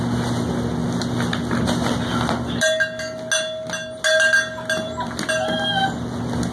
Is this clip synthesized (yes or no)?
no